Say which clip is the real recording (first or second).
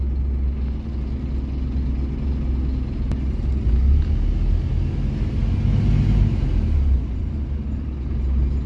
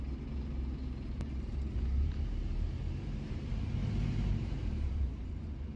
first